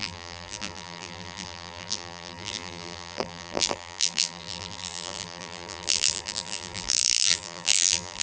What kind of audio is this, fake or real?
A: fake